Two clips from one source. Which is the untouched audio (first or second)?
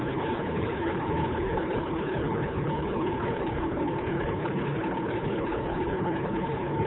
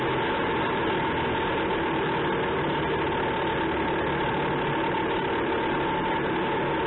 second